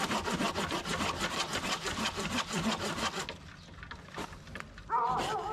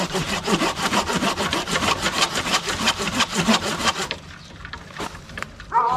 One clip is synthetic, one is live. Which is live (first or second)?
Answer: first